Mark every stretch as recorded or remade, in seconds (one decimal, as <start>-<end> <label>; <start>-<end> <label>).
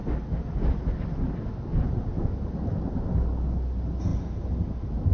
0.0-5.1 recorded